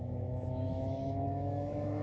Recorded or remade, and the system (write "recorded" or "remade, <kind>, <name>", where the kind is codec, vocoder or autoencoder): remade, autoencoder, DAC-VAE